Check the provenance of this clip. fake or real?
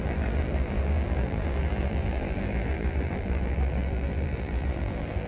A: fake